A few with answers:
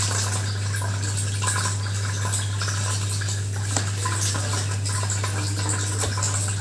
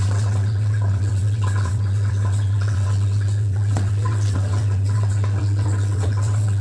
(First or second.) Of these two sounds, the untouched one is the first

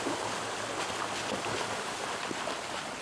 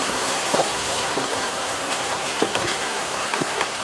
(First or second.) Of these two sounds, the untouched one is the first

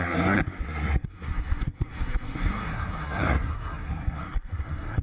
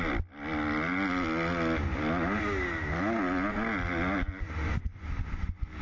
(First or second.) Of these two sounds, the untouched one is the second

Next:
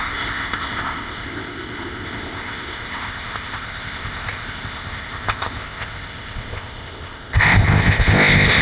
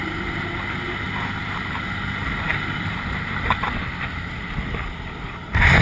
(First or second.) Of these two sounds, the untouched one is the second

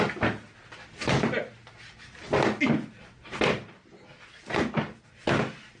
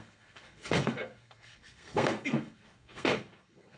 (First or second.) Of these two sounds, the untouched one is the first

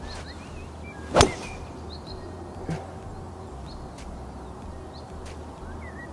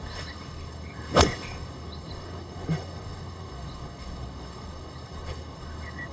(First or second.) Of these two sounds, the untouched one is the first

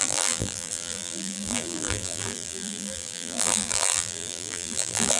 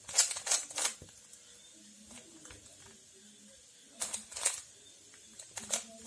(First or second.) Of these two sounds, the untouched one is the second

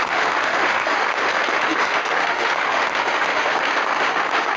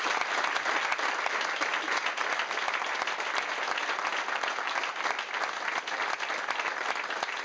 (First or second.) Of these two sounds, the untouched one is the second